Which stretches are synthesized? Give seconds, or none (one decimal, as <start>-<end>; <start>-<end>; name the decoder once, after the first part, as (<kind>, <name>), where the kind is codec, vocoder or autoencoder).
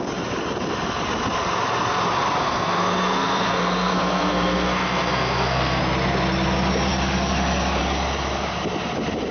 2.4-5.8 (codec, SNAC)